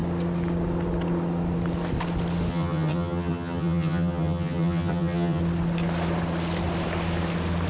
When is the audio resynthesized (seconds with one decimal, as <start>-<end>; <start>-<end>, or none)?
2.5-5.4